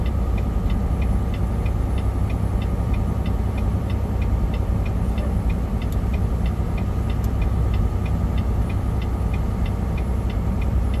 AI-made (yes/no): no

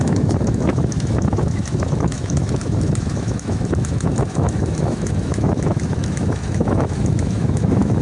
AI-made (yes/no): yes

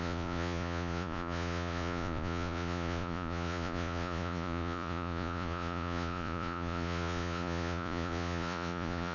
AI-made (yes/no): yes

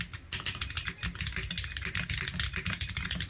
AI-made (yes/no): no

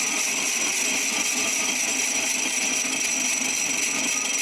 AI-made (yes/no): no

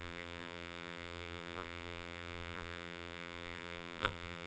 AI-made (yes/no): yes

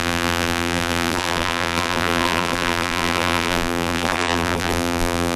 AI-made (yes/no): yes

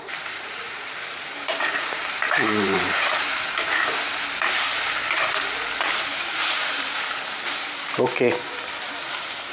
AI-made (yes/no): yes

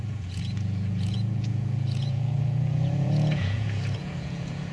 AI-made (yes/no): yes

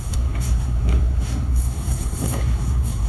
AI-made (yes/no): yes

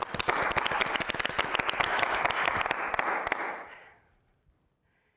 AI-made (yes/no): no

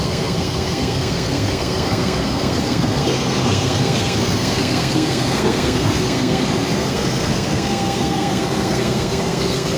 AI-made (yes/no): yes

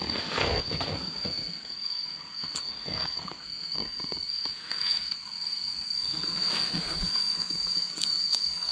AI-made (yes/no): yes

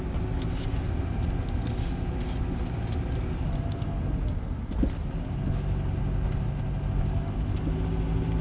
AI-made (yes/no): no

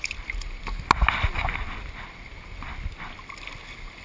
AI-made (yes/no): no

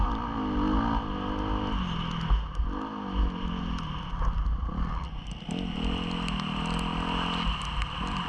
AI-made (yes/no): no